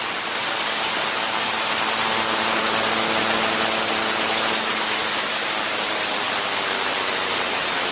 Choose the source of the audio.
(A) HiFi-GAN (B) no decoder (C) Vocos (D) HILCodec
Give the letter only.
B